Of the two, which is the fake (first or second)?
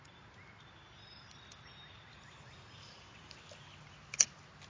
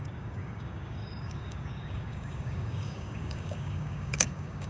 second